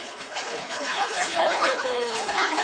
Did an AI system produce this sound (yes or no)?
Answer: yes